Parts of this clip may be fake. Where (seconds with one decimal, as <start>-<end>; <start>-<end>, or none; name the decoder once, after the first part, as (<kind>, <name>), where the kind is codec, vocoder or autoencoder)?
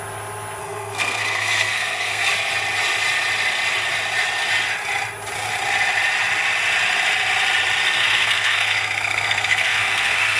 0.6-2.3 (codec, SNAC); 8.0-10.4